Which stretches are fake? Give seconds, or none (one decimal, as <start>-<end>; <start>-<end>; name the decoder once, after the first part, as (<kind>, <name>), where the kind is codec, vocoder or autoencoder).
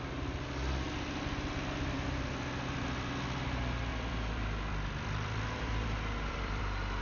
3.9-6.6 (vocoder, BigVGAN v2)